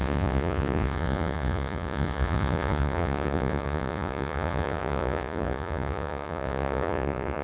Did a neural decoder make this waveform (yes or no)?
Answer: yes